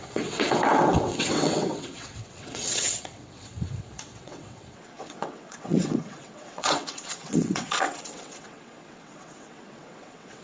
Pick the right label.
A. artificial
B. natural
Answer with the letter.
A